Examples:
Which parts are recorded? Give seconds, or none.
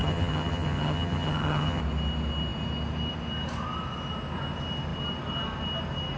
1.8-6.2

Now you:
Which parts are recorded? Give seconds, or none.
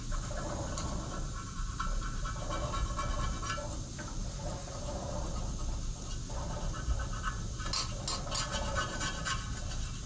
0.0-4.6; 5.3-8.5; 9.2-10.1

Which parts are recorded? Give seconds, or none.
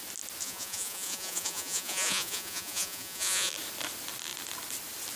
0.0-0.4; 3.5-5.2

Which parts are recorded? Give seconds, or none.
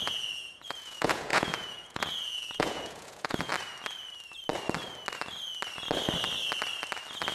3.5-7.3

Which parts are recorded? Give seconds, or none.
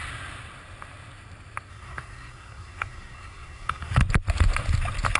0.0-1.7; 4.0-5.2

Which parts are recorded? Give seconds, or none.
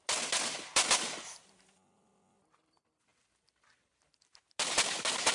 0.0-5.3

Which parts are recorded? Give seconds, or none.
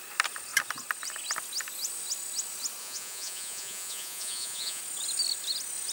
0.0-2.8; 4.8-5.9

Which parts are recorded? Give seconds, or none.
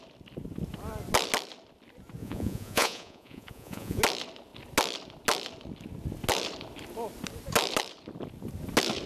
0.0-2.2; 4.0-9.1